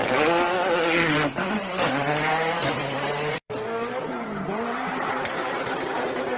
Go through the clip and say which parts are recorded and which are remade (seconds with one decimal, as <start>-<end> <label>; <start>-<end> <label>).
0.0-1.5 recorded; 1.5-6.4 remade